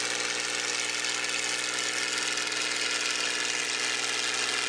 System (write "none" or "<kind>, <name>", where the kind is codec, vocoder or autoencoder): none